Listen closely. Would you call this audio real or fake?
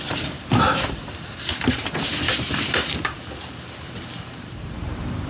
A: fake